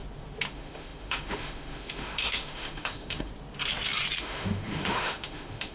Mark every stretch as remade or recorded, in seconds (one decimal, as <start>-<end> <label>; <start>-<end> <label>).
0.0-0.5 recorded; 0.5-3.3 remade; 3.3-4.2 recorded; 4.2-5.7 remade